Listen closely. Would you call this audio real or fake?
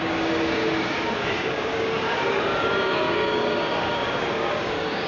fake